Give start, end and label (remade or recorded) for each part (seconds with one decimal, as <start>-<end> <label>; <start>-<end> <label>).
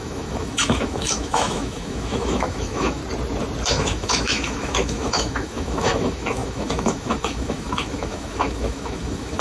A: 0.0-3.0 remade; 3.0-3.7 recorded; 3.7-9.4 remade